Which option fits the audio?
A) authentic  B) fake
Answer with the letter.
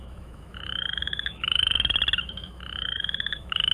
B